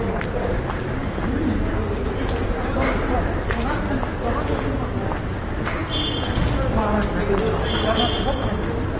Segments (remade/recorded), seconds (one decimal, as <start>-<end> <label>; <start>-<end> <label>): 0.0-9.0 recorded

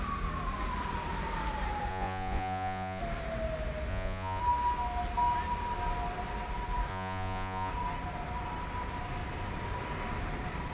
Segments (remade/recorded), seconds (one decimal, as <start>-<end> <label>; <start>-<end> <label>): 0.0-1.9 recorded; 1.9-3.0 remade; 3.0-3.9 recorded; 3.9-4.4 remade; 4.4-6.9 recorded; 6.9-7.7 remade; 7.7-10.7 recorded

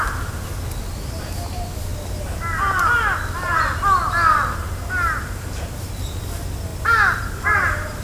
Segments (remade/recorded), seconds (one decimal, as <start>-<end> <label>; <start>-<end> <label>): 0.0-8.0 recorded

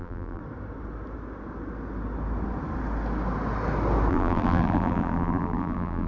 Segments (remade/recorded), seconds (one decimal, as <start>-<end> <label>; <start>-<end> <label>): 0.0-0.4 remade; 0.4-4.1 recorded; 4.1-6.1 remade

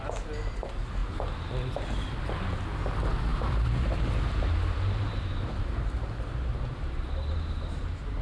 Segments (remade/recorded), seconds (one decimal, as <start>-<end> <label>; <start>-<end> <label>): 0.0-3.3 recorded; 3.3-8.2 remade

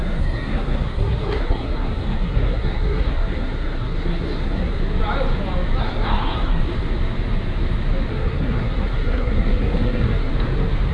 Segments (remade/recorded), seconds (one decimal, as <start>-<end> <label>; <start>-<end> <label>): 0.0-4.8 remade; 4.8-5.8 recorded; 5.8-6.6 remade; 6.6-8.1 recorded; 8.1-10.3 remade; 10.3-10.9 recorded

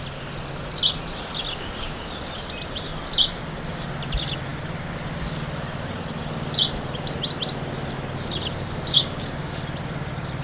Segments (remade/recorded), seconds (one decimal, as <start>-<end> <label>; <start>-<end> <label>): 0.0-1.5 recorded; 1.5-2.1 remade; 2.1-8.9 recorded; 8.9-9.5 remade; 9.5-10.4 recorded